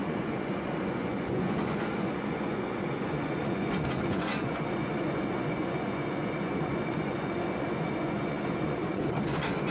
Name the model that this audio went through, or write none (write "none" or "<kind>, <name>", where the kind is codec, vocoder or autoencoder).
vocoder, Vocos